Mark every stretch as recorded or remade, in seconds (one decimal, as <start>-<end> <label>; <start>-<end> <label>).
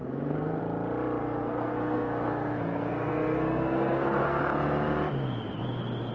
0.0-0.6 remade; 0.6-1.2 recorded; 1.2-4.4 remade; 4.4-6.1 recorded